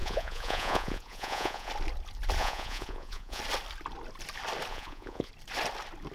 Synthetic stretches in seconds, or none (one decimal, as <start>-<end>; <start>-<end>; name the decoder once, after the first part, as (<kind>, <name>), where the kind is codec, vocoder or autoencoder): 0.0-1.7 (vocoder, Vocos); 2.4-3.4; 4.7-5.3